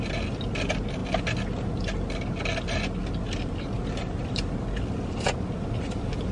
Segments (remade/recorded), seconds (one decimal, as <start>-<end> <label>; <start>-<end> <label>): 0.0-6.3 recorded